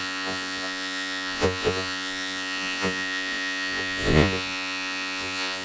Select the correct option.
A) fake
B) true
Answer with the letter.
A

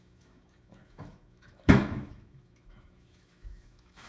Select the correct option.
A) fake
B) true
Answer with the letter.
A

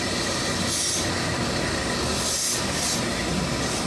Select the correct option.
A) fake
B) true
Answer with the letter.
B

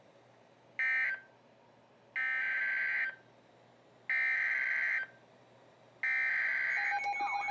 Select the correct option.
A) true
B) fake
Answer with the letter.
A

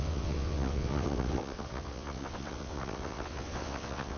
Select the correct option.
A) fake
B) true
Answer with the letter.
A